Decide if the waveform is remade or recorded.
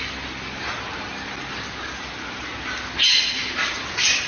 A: recorded